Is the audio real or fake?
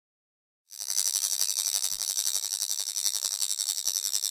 fake